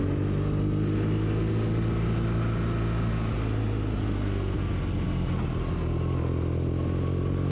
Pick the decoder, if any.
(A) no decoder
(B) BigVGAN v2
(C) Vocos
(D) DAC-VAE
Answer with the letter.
A